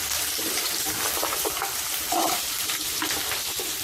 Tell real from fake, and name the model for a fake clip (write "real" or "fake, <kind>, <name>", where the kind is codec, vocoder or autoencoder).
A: fake, vocoder, BigVGAN v2